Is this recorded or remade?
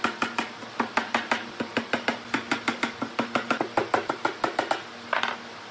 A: recorded